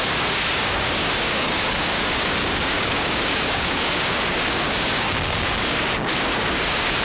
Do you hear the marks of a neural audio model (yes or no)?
yes